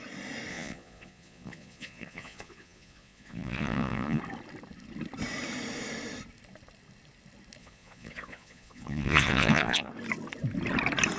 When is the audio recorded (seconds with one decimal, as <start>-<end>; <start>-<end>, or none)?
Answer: 0.0-0.5; 4.2-7.6; 9.9-11.2